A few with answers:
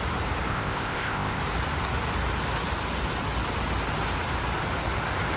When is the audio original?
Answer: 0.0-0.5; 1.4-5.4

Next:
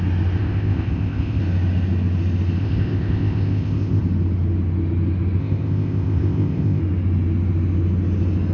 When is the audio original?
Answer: 0.0-0.4; 1.4-2.6; 4.0-5.4; 6.8-8.5

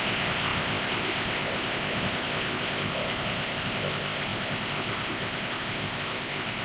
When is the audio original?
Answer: none